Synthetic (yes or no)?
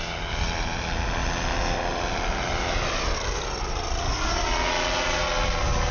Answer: no